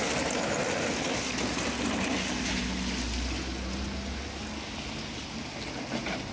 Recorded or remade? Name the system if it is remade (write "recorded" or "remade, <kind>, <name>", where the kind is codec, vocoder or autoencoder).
recorded